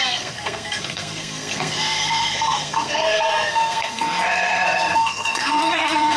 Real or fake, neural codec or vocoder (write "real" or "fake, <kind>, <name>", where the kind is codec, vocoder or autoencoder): fake, codec, SNAC